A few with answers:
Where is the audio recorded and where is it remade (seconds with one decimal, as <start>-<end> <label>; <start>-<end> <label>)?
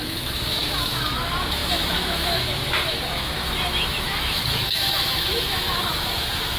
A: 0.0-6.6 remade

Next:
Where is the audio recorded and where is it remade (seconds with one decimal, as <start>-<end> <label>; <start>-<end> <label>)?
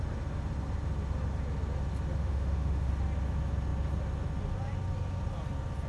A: 0.0-2.2 recorded; 2.2-2.9 remade; 2.9-5.9 recorded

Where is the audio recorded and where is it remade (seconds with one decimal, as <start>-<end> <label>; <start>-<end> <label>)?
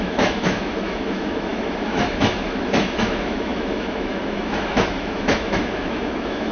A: 0.0-6.5 remade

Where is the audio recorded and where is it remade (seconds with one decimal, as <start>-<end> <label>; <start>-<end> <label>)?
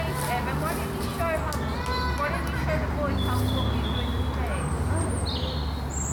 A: 0.0-6.1 recorded